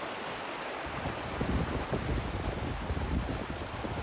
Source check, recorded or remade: recorded